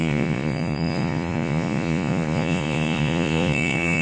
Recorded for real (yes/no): no